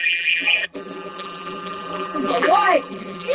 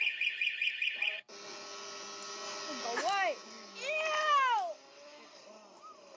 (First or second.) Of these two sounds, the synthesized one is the first